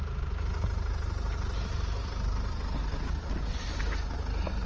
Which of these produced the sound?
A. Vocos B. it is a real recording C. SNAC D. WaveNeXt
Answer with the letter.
B